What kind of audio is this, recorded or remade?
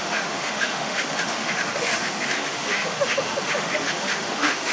remade